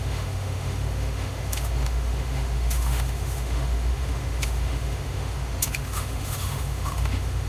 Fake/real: fake